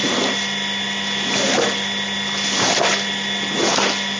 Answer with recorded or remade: recorded